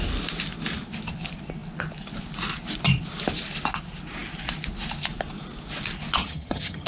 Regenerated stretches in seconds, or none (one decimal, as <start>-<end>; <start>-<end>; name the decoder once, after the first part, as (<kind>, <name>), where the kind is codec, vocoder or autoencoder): 6.2-6.9 (vocoder, HiFi-GAN)